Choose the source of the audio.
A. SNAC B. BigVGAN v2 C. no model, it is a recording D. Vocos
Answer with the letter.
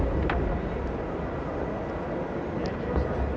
C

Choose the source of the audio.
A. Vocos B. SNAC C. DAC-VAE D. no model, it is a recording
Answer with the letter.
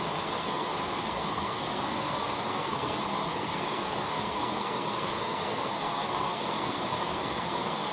B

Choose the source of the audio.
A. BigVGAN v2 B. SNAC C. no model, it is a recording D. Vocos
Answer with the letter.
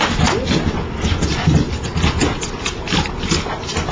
C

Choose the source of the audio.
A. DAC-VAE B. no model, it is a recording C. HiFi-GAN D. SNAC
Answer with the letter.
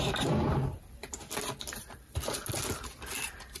B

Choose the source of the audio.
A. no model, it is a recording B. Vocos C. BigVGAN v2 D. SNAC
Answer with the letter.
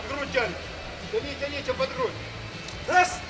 A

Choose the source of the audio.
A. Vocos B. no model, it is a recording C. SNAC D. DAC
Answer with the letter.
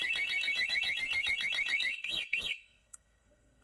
C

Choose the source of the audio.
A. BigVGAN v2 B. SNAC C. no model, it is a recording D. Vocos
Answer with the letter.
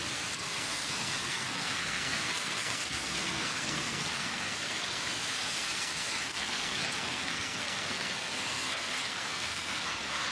B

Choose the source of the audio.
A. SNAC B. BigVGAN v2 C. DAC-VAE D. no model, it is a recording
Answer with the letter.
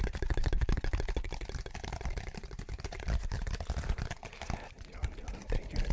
D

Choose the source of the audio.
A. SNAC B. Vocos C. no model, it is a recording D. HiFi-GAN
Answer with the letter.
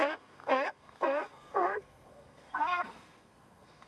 A